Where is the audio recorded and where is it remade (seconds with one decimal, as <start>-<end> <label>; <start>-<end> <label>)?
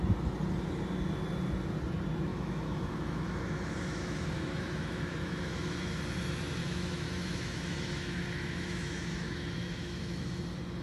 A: 0.0-2.3 recorded; 2.3-6.0 remade; 6.0-6.6 recorded; 6.6-10.4 remade; 10.4-10.8 recorded